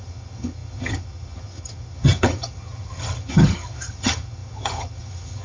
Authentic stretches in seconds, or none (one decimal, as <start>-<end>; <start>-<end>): none